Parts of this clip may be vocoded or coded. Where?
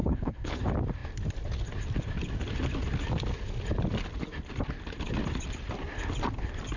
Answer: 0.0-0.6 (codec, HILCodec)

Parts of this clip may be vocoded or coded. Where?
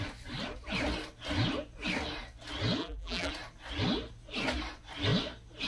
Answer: 2.8-3.3 (vocoder, BigVGAN v2)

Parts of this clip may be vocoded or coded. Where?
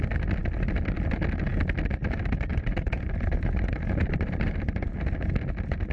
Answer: 2.5-5.4 (vocoder, BigVGAN v2)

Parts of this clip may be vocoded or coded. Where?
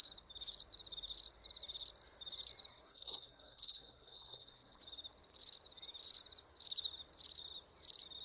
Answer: 2.7-4.8 (codec, SNAC)